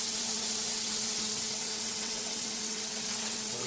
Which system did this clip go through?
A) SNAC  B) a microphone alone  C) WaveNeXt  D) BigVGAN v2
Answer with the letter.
C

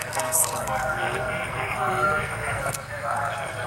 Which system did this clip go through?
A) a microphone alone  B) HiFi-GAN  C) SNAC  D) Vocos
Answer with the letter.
C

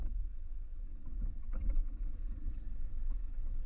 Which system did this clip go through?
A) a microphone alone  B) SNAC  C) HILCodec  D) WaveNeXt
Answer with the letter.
D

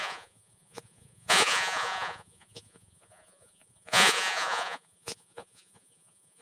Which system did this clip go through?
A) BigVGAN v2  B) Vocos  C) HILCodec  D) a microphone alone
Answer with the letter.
B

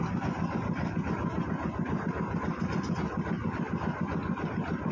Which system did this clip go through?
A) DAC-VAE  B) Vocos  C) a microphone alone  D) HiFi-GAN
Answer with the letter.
C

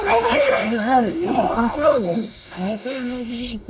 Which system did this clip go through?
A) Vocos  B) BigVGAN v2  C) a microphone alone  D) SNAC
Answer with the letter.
D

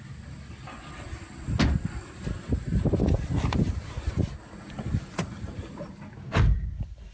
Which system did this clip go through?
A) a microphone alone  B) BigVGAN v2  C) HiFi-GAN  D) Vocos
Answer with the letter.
A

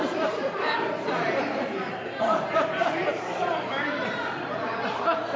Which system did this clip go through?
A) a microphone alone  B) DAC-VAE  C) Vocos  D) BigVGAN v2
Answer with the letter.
D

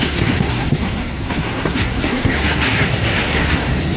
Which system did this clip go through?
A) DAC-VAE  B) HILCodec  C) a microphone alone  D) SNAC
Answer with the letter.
D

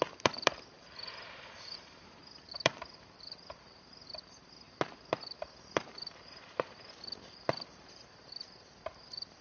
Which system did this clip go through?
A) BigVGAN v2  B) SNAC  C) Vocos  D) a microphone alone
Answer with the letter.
A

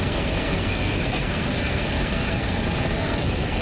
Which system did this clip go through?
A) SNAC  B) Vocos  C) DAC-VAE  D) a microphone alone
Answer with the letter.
A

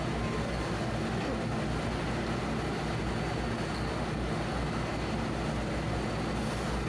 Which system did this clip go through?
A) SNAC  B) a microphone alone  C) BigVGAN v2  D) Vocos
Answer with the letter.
B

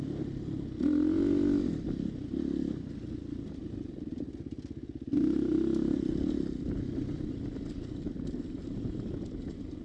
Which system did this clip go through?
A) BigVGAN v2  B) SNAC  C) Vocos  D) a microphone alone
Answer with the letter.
D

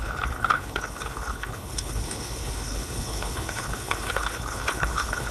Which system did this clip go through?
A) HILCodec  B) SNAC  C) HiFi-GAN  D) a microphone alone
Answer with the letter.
A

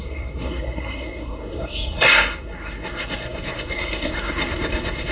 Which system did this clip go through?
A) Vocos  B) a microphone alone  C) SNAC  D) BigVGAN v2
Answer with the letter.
C